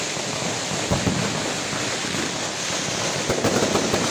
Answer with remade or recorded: recorded